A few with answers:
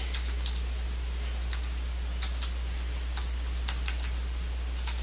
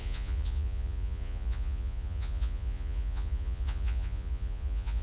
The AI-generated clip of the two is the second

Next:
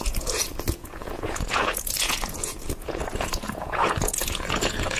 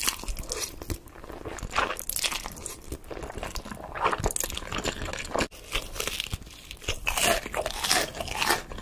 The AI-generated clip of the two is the first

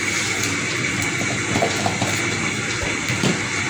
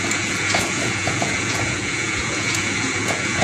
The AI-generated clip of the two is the second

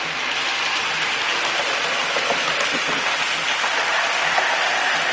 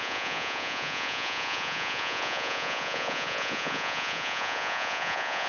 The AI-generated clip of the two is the second